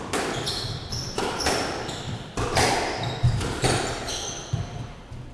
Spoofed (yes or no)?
no